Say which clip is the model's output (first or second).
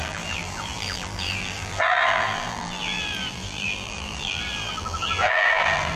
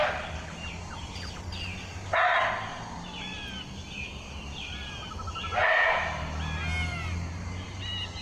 first